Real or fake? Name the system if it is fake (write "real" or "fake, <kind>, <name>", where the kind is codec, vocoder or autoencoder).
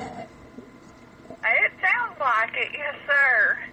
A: fake, vocoder, BigVGAN v2